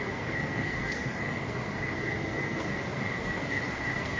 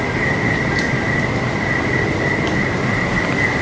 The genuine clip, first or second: second